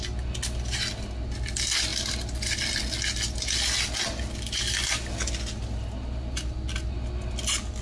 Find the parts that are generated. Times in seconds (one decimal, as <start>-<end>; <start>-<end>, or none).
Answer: none